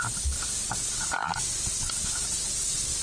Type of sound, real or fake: real